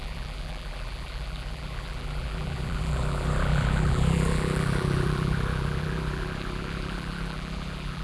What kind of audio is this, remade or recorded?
remade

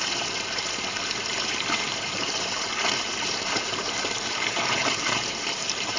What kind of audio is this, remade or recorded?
remade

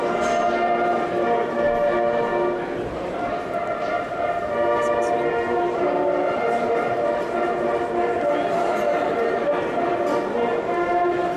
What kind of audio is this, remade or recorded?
recorded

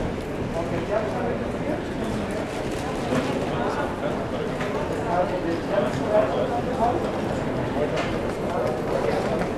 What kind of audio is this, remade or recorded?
recorded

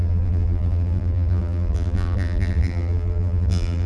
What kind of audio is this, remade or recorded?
remade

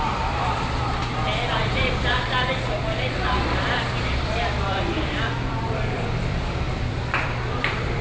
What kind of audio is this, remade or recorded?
remade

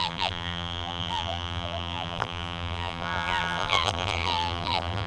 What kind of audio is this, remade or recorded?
remade